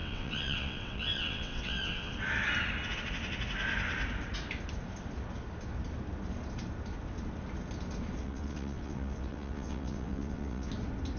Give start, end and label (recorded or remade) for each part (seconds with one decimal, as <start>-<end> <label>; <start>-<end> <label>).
0.0-2.1 remade; 2.1-8.2 recorded; 8.2-10.7 remade; 10.7-11.2 recorded